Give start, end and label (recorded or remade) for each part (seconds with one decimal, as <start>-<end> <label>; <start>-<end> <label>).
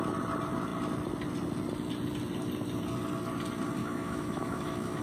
0.0-3.8 recorded; 3.8-5.0 remade